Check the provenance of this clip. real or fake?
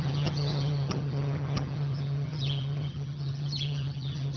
fake